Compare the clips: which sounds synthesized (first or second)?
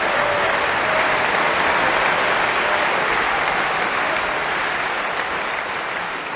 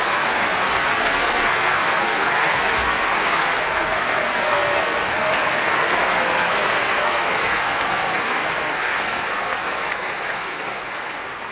second